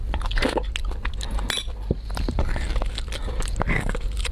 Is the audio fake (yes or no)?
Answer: no